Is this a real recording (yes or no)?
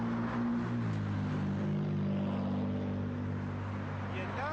yes